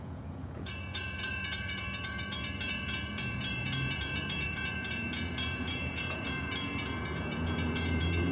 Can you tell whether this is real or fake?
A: fake